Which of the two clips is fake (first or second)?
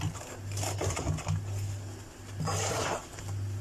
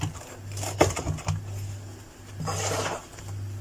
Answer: first